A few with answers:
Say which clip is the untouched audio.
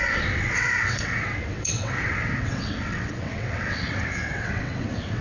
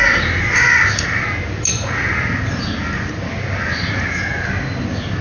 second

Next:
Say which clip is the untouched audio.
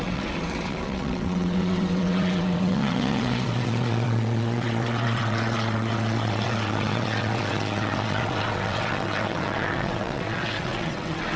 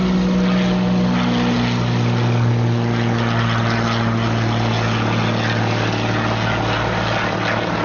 second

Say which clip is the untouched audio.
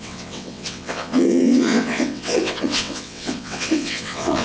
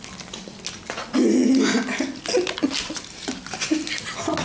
second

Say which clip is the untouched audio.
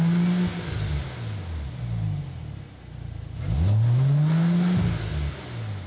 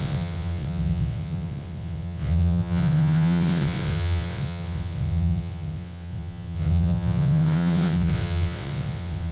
first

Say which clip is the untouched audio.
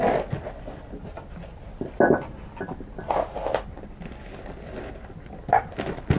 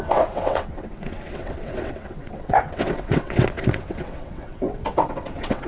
first